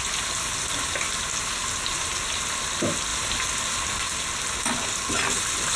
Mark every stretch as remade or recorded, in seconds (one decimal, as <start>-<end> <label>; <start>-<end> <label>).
0.0-5.8 recorded